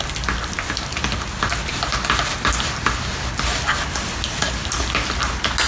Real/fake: real